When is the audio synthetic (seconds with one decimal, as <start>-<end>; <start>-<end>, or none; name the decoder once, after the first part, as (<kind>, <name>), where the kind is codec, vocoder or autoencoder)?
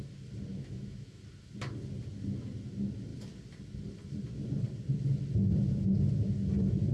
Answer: 0.5-1.2 (autoencoder, DAC-VAE)